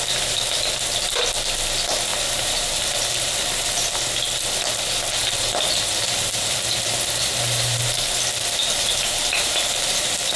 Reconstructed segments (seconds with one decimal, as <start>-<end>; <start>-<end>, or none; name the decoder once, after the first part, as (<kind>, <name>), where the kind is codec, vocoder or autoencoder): 2.1-3.9 (vocoder, BigVGAN v2); 5.2-8.0; 8.6-10.0